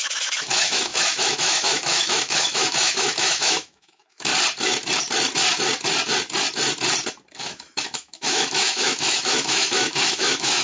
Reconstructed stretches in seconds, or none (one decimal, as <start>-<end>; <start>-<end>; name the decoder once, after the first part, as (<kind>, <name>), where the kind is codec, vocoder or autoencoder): 0.0-4.3 (autoencoder, DAC-VAE); 7.4-10.6